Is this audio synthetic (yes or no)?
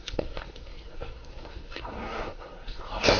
yes